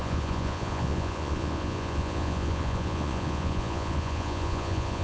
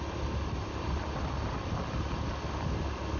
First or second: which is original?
second